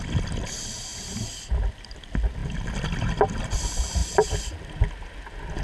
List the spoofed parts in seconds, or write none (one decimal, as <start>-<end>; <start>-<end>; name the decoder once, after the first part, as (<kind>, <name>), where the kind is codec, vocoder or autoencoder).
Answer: 0.9-1.5 (vocoder, BigVGAN v2); 4.0-4.7